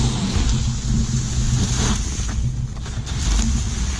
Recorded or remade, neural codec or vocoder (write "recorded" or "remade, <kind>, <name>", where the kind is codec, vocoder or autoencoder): recorded